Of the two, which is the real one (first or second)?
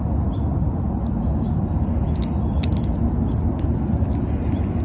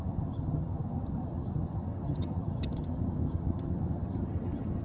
first